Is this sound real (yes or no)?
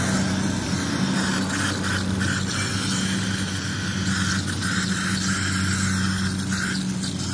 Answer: yes